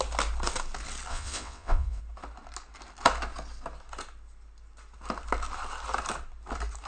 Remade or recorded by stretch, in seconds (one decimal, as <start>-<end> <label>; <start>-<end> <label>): 0.0-1.1 recorded; 1.1-2.0 remade; 2.0-6.9 recorded